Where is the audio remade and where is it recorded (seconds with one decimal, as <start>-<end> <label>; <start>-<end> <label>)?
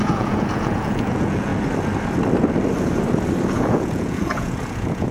0.0-1.5 remade; 1.5-3.6 recorded; 3.6-5.1 remade